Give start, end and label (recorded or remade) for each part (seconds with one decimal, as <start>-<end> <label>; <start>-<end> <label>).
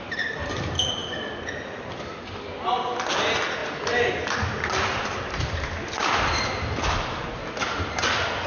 0.0-8.5 recorded